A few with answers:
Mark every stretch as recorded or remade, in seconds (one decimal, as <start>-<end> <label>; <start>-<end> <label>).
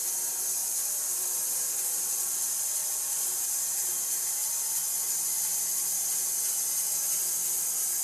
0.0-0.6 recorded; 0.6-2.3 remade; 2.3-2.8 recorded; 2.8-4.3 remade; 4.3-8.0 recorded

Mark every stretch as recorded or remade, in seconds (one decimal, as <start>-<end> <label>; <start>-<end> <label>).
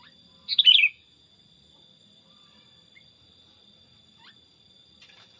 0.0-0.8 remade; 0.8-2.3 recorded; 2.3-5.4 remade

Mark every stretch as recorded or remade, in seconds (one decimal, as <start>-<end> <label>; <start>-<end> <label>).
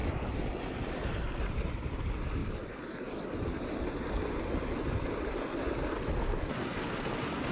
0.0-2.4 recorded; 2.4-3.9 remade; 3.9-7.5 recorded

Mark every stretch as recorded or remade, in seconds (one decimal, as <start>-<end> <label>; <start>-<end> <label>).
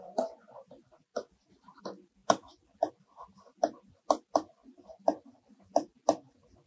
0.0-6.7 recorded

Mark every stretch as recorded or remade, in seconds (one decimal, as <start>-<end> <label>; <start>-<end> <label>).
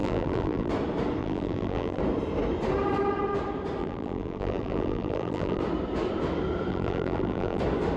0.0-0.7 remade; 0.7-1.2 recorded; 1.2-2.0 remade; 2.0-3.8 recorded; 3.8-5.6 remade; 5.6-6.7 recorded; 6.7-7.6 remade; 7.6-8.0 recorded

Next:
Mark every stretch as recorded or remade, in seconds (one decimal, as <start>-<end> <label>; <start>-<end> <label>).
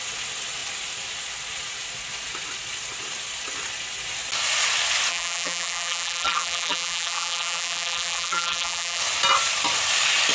0.0-5.1 recorded; 5.1-9.0 remade; 9.0-10.3 recorded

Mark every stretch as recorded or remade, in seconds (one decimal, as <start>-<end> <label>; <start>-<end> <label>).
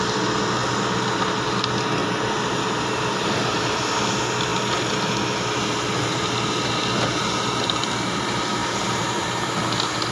0.0-0.6 recorded; 0.6-1.3 remade; 1.3-2.0 recorded; 2.0-4.1 remade; 4.1-8.6 recorded; 8.6-9.4 remade; 9.4-10.1 recorded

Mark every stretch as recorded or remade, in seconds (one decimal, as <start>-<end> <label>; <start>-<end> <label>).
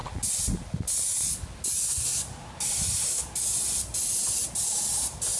0.0-5.4 recorded